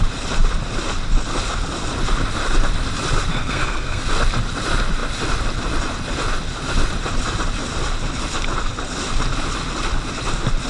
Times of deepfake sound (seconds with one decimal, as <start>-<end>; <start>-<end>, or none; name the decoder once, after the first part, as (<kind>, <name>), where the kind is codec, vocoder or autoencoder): 3.3-4.0 (codec, SNAC)